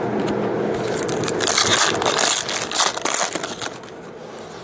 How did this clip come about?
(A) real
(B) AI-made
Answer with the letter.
A